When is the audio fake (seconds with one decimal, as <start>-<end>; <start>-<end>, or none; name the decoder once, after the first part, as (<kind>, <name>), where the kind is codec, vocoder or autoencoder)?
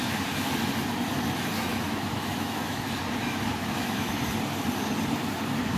1.7-2.8 (autoencoder, DAC-VAE); 3.2-4.1